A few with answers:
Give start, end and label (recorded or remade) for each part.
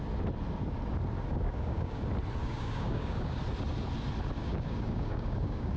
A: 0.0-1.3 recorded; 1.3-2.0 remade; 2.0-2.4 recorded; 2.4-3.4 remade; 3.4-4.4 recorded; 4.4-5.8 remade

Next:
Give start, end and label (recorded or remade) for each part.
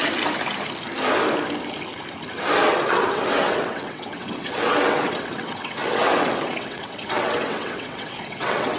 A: 0.0-2.7 recorded; 2.7-8.8 remade